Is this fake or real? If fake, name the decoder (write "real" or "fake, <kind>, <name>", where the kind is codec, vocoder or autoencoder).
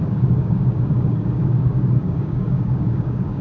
fake, codec, DAC